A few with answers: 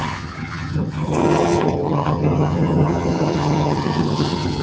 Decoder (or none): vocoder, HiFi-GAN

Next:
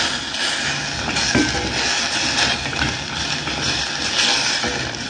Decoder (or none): none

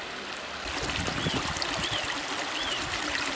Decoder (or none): none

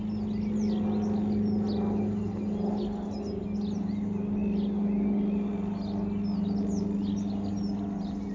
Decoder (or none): none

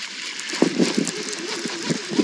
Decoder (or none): none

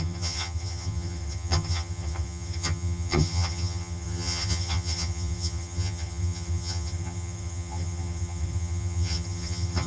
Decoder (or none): vocoder, HiFi-GAN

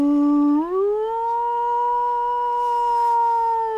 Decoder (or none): none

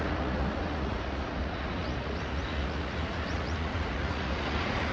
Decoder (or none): vocoder, Vocos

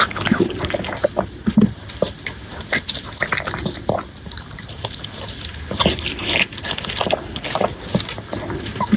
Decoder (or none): none